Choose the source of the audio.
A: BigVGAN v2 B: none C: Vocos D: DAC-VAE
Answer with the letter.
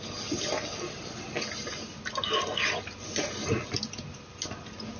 B